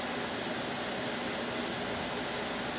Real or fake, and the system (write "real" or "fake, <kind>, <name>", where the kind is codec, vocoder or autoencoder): real